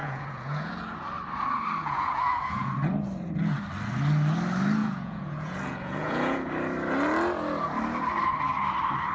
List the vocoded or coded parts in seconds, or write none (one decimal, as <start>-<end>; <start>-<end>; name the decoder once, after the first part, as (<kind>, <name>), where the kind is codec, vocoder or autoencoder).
0.0-0.7 (vocoder, Vocos); 1.8-2.7; 4.8-6.5